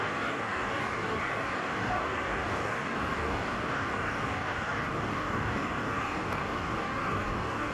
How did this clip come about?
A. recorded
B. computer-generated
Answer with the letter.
B